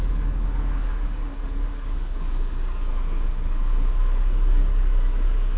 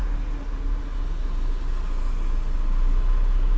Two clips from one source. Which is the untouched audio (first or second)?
second